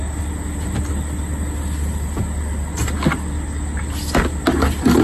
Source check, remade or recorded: recorded